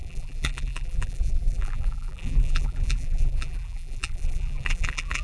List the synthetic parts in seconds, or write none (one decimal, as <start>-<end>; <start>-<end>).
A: 0.0-5.2